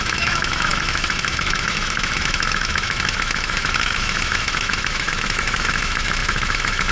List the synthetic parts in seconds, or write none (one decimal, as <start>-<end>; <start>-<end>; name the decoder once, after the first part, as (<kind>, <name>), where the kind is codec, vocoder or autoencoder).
0.0-6.9 (autoencoder, DAC-VAE)